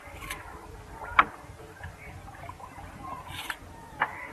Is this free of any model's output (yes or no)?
yes